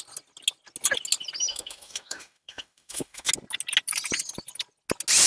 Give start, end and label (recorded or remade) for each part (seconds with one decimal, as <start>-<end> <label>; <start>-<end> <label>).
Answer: 0.0-1.5 recorded; 1.5-3.3 remade; 3.3-5.3 recorded